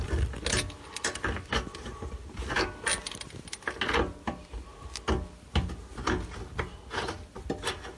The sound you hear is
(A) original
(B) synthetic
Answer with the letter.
A